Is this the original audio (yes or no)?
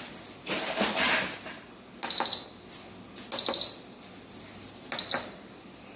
yes